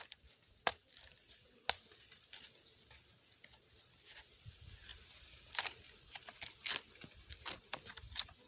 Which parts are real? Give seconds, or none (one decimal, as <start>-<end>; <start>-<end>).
0.0-8.5